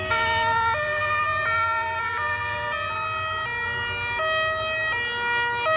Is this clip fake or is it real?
real